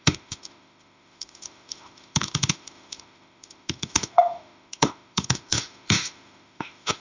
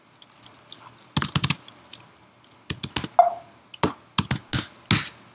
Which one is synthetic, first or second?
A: first